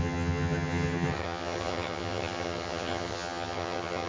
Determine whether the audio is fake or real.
fake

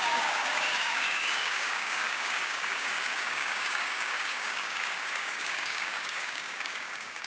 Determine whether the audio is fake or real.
fake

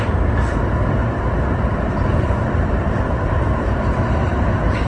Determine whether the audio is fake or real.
fake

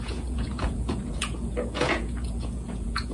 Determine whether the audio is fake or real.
fake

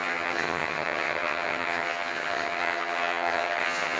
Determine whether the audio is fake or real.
fake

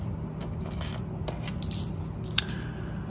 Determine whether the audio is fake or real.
real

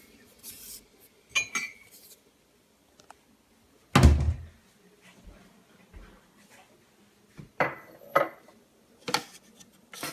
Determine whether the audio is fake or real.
real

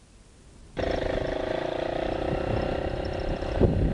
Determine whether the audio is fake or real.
real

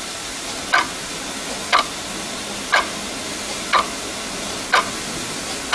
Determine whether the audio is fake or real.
real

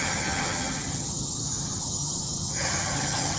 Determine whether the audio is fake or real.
fake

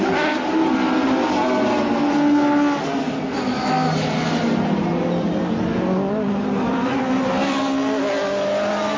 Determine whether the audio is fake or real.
real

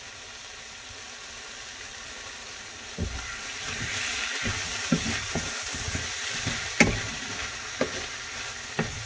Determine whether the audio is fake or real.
real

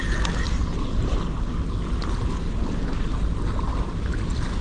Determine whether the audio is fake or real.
real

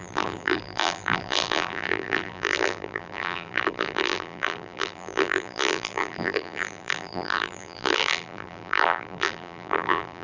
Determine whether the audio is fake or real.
fake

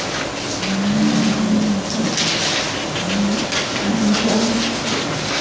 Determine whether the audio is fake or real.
real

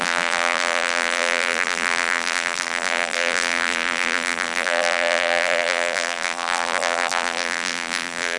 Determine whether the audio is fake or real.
fake